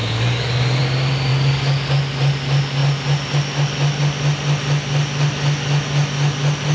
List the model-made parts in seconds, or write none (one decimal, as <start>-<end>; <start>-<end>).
0.0-0.8; 1.3-1.9

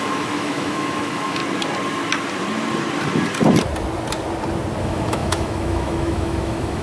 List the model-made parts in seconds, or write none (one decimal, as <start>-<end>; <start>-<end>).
0.0-1.4; 4.8-6.8

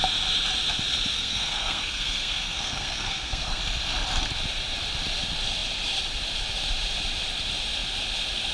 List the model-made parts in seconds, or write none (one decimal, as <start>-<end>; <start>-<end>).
1.1-3.6

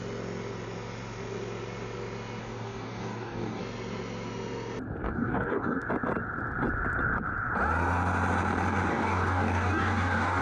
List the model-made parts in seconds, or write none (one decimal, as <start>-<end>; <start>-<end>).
2.4-3.6; 5.0-5.8; 8.9-10.4